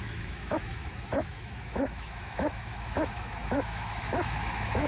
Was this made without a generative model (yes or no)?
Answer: no